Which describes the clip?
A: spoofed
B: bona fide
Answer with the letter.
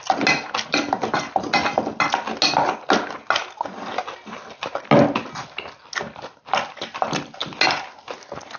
B